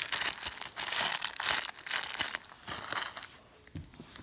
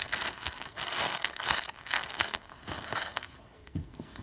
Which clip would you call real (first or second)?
first